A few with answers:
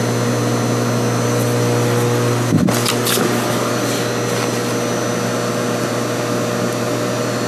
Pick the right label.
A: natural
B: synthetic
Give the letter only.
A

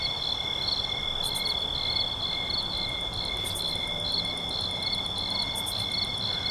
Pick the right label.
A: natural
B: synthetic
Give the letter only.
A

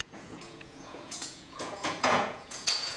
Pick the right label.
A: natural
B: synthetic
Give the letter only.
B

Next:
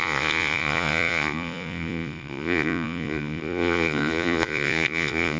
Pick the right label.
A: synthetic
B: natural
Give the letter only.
A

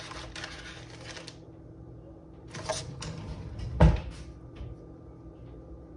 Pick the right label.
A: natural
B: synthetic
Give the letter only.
A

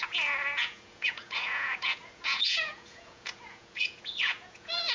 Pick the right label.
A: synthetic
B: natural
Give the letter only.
A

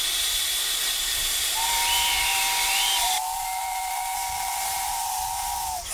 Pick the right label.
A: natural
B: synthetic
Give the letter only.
B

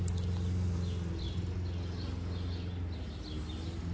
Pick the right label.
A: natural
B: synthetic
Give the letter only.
A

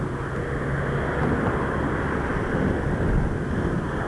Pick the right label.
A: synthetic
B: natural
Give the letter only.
B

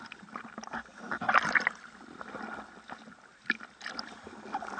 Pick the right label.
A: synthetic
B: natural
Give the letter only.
B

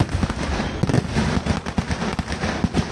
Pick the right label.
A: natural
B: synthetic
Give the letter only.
A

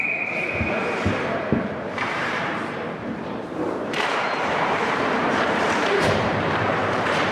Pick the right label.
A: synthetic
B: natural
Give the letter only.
A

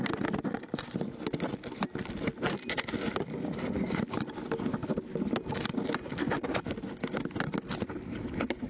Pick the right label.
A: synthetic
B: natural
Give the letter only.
B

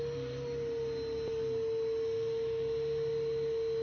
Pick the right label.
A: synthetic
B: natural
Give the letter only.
B